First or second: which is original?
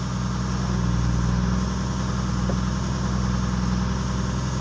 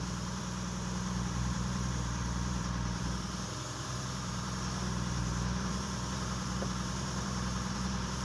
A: first